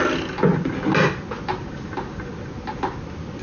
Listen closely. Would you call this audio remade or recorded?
recorded